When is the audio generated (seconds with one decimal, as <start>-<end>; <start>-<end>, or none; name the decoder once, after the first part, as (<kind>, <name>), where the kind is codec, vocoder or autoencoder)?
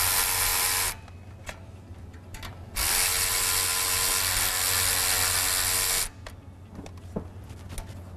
none